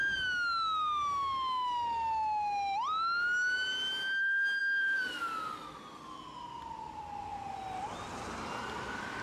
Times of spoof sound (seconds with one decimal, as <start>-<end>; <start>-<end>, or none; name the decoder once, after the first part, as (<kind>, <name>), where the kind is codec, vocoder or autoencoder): 4.6-5.2 (vocoder, BigVGAN v2)